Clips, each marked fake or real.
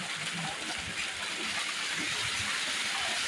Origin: real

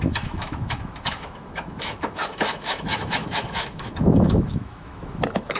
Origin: fake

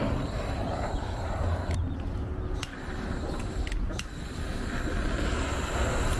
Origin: fake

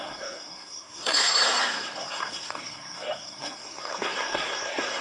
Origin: fake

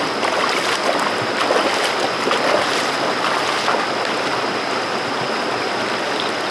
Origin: real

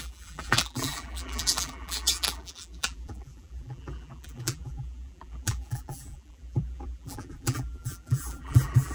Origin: fake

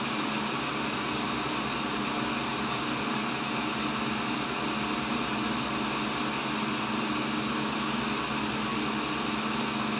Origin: real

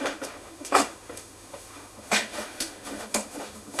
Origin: fake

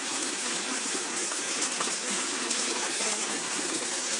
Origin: fake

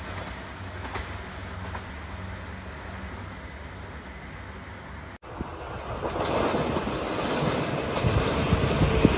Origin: real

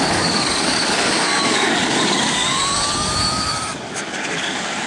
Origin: fake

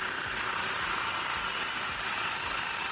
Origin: real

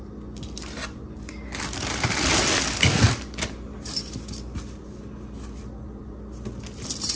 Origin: real